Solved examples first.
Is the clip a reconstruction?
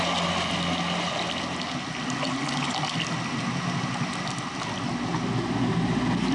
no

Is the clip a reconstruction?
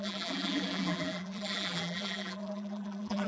yes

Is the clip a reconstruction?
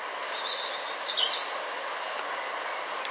no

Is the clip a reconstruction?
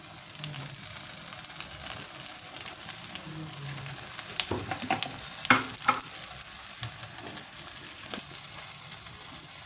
no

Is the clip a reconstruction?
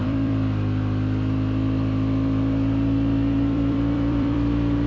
yes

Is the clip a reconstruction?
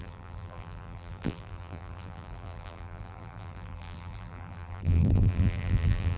yes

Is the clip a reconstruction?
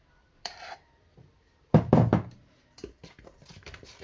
yes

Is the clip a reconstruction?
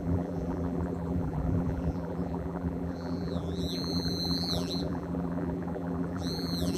yes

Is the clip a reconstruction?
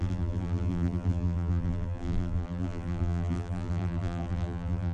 yes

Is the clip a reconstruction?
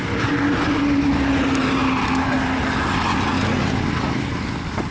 no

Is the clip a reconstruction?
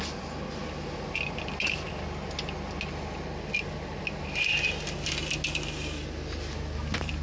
no